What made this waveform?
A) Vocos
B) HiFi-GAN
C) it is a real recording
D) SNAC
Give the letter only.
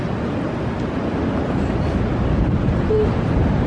C